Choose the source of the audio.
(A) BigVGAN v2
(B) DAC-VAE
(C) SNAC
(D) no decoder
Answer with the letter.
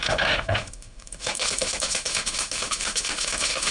B